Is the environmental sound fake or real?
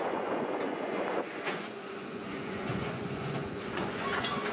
fake